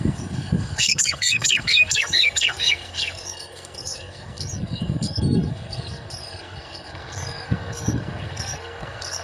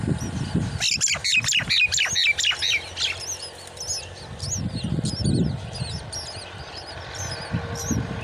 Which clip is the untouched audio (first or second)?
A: second